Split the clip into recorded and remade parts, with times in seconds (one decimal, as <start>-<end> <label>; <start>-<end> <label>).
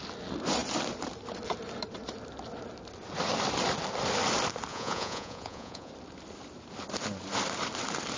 0.0-4.7 recorded; 4.7-5.9 remade; 5.9-8.2 recorded